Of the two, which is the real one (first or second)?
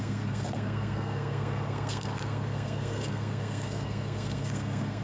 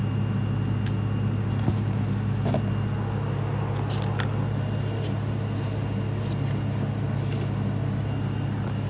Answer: second